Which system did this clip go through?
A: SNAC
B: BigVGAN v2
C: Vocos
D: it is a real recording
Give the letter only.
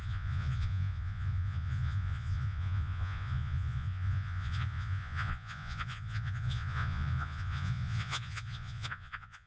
C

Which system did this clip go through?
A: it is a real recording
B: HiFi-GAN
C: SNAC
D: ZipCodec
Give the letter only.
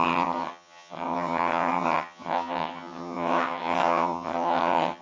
B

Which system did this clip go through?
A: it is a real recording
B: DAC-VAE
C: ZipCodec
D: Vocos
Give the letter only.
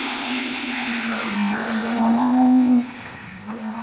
C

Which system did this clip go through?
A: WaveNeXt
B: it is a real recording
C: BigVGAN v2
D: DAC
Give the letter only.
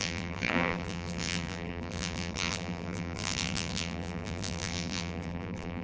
C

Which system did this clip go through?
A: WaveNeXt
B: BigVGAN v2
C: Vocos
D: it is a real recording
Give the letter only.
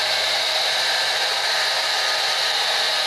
B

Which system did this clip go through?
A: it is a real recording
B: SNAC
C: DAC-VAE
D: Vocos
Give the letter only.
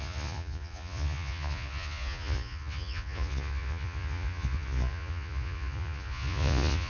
D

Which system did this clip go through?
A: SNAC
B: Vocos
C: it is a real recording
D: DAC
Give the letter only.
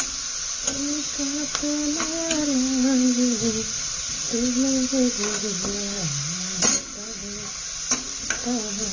C